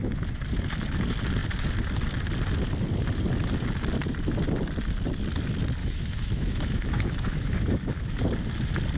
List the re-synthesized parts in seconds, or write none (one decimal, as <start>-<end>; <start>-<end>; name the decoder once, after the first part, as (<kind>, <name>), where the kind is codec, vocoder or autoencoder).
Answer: 5.8-8.2 (autoencoder, DAC-VAE)